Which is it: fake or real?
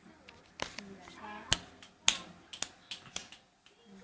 real